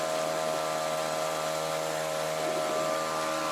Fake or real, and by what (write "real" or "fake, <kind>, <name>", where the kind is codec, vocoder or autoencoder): real